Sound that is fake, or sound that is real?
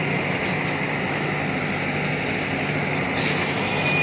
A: real